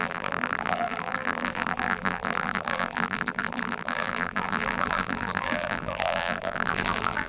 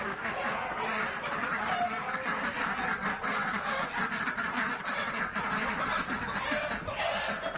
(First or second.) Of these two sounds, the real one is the second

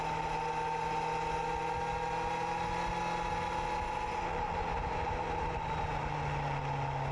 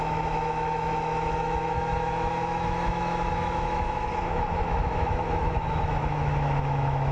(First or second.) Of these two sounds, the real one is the first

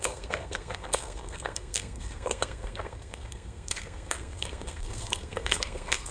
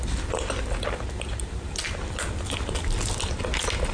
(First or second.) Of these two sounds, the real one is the second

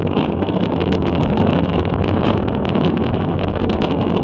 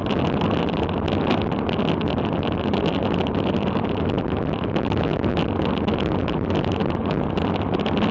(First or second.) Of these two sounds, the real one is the second